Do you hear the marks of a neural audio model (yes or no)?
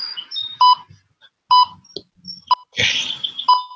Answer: no